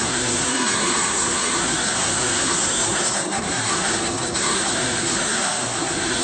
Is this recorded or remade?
remade